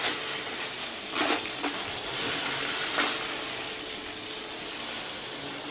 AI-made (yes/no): no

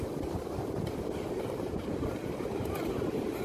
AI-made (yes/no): yes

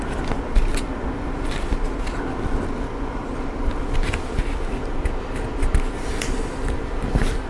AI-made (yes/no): no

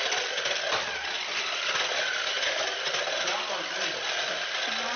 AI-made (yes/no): no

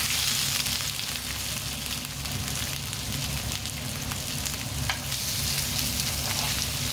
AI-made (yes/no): no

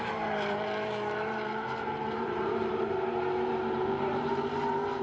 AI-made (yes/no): yes